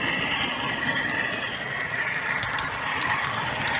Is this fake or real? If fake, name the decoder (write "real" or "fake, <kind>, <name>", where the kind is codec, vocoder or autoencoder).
real